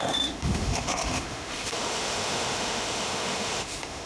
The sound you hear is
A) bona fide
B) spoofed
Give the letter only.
B